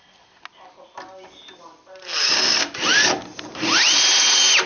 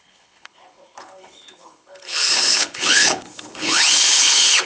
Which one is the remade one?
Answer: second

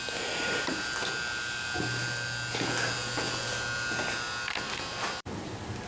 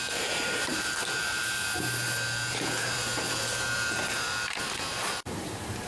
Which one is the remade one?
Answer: second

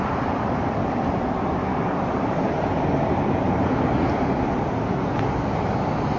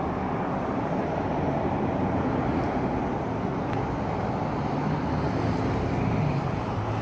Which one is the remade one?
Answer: first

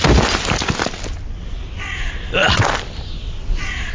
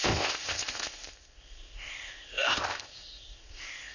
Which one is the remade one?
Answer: second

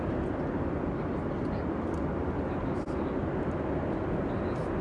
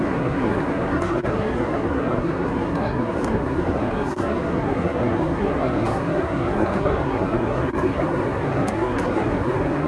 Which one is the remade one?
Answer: second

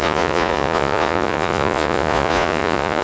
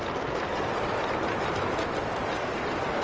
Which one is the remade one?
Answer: first